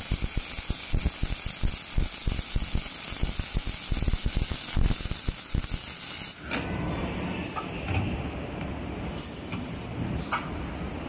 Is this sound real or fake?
real